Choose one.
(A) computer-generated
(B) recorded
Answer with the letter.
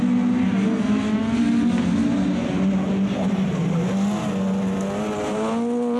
B